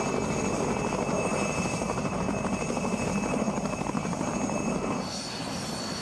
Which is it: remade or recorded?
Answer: recorded